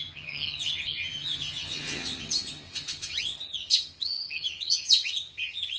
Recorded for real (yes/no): no